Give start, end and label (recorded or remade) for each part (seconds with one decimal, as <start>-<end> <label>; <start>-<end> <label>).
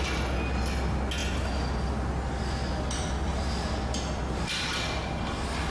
0.0-5.7 recorded